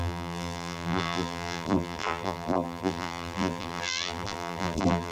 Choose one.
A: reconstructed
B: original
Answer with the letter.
A